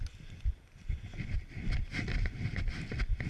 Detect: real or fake real